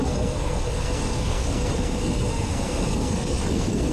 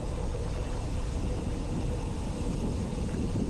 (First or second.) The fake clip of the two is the first